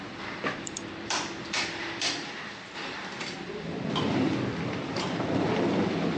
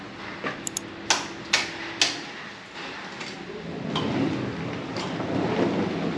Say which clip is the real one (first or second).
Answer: second